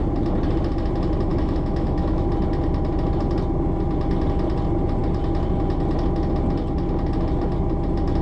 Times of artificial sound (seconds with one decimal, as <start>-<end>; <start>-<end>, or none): 1.3-2.3